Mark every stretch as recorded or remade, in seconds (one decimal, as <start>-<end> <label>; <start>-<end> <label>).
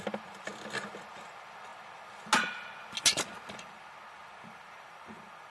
0.0-5.5 recorded